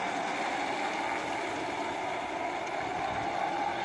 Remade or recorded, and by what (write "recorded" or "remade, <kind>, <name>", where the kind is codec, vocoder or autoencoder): recorded